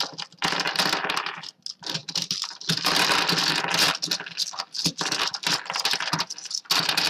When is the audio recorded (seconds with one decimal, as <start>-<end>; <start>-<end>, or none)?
0.0-7.1